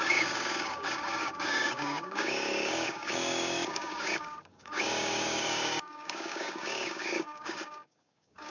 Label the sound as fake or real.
fake